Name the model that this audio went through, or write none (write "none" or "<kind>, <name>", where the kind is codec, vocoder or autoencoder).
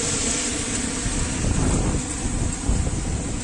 none